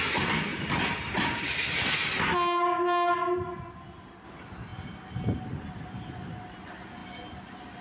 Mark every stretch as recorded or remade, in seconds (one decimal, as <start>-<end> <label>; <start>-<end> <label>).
0.0-7.8 recorded